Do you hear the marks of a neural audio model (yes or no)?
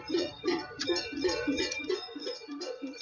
yes